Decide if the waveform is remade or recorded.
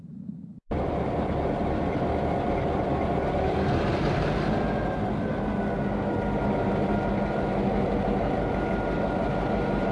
recorded